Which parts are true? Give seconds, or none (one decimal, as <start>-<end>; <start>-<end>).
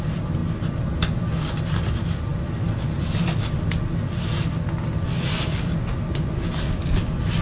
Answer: 0.0-7.4